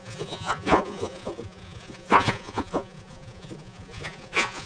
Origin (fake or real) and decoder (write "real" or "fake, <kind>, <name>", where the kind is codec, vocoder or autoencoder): fake, vocoder, Vocos